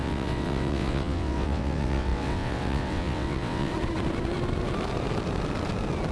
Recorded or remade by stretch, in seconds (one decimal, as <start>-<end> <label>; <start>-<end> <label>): 0.0-3.7 remade; 3.7-6.1 recorded